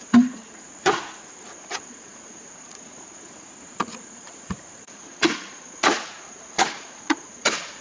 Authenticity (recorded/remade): remade